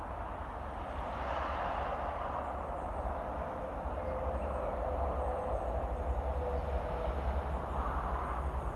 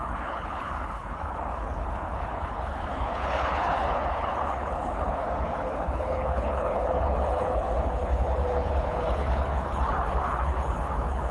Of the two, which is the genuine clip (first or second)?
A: first